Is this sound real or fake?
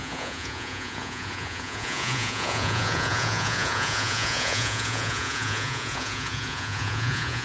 fake